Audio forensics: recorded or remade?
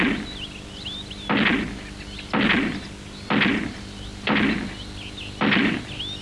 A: recorded